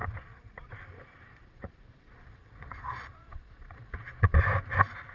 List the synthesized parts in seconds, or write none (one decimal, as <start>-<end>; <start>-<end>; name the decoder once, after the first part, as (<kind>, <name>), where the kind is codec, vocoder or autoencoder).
0.0-0.7 (vocoder, Vocos); 1.3-4.4